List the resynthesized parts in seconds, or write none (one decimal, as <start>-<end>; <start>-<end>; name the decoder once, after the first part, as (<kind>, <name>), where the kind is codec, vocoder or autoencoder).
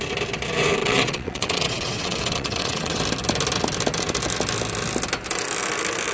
0.8-3.0 (vocoder, WaveNeXt)